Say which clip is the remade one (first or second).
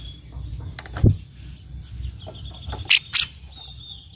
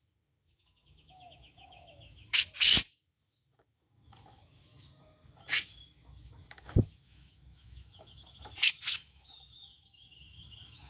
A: second